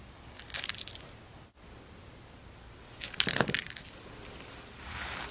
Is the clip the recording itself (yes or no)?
yes